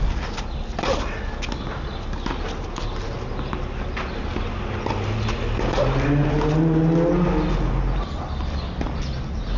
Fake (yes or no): no